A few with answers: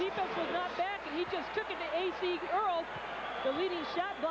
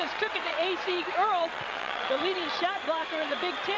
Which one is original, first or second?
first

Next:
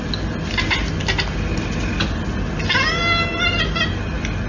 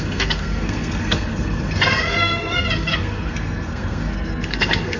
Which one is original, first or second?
first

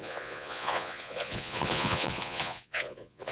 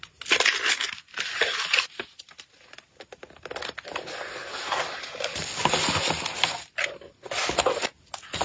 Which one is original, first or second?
second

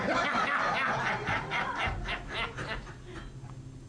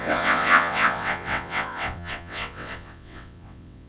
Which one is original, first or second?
first